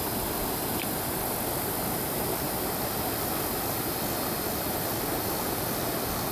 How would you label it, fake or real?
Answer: real